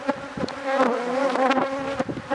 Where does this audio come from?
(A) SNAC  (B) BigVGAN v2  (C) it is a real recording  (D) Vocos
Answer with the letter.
C